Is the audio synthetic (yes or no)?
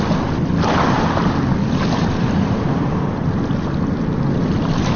no